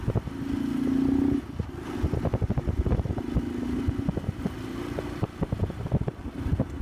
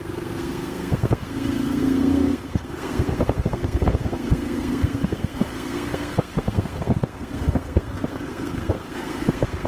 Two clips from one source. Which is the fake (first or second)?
second